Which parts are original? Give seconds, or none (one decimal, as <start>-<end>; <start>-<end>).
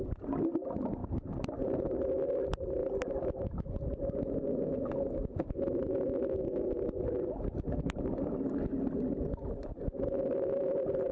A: 0.0-11.1